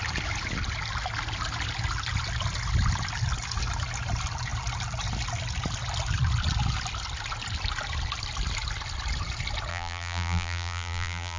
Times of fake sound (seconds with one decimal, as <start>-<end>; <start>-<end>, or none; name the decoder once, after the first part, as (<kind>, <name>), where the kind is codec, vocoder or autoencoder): 9.7-11.4 (vocoder, BigVGAN v2)